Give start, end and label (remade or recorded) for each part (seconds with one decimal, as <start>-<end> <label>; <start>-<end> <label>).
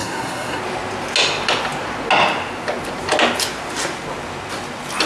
0.0-0.6 remade; 0.6-5.1 recorded